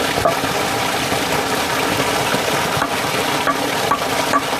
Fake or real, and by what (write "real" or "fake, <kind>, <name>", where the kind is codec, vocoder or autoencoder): real